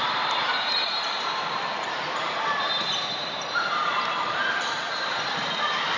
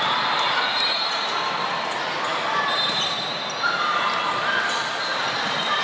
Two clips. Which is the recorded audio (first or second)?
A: second